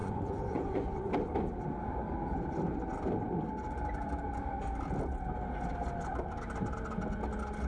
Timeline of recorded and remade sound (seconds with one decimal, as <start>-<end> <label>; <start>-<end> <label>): 0.0-1.1 remade; 1.1-7.7 recorded